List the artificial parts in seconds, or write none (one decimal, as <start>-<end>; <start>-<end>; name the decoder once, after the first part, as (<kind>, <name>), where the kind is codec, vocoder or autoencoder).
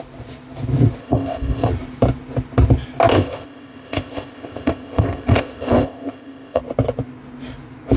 1.0-1.7 (codec, ZipCodec); 3.1-6.6